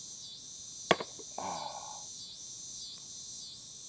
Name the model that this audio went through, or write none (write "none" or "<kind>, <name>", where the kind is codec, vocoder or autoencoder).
none